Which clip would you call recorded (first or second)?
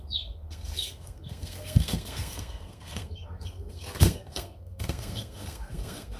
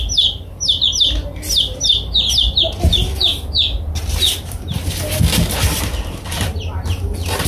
second